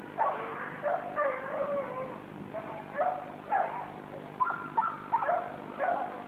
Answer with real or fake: real